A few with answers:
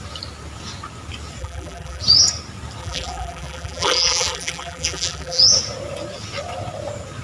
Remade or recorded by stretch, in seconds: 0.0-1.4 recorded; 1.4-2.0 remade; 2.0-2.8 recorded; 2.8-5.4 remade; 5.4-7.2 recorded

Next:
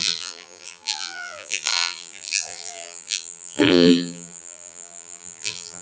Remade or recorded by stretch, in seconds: 0.0-5.8 remade

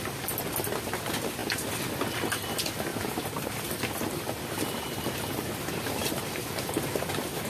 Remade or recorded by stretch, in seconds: 0.0-2.9 recorded; 2.9-6.7 remade; 6.7-7.5 recorded

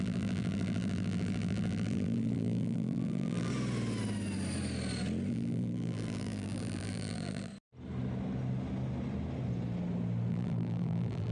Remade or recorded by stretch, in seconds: 0.0-3.5 remade; 3.5-5.3 recorded; 5.3-7.5 remade; 7.5-10.3 recorded; 10.3-11.3 remade

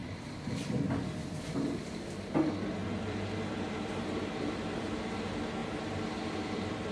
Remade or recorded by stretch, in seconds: 0.0-2.3 remade; 2.3-2.8 recorded; 2.8-5.0 remade; 5.0-5.6 recorded; 5.6-6.9 remade

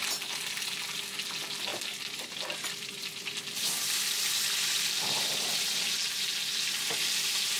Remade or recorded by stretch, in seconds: 0.0-1.7 recorded; 1.7-5.9 remade; 5.9-7.6 recorded

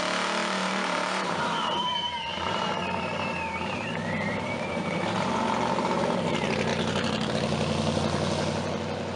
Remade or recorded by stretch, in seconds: 0.0-0.4 recorded; 0.4-5.4 remade; 5.4-6.7 recorded; 6.7-7.3 remade; 7.3-9.2 recorded